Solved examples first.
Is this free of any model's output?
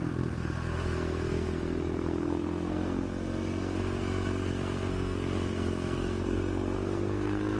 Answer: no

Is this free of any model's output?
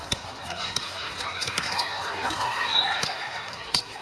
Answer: no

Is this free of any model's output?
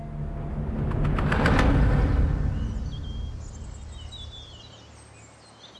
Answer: yes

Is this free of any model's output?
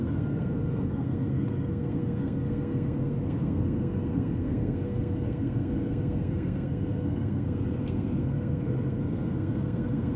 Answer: no